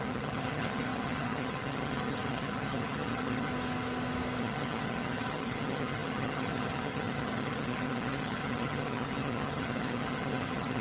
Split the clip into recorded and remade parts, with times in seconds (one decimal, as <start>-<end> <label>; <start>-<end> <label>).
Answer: 0.0-3.5 remade; 3.5-4.4 recorded; 4.4-10.8 remade